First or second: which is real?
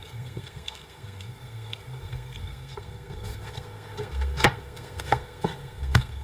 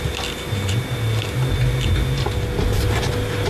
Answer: second